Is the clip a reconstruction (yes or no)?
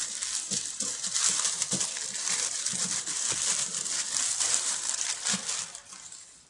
yes